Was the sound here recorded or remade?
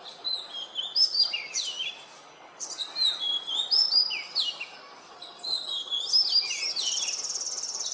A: recorded